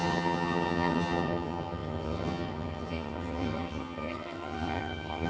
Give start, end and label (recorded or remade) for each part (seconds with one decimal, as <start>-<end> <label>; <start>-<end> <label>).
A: 0.0-5.3 remade